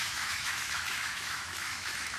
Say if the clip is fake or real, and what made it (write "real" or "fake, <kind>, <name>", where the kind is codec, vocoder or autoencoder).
fake, autoencoder, DAC-VAE